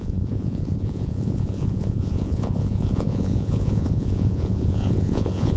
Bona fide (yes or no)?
no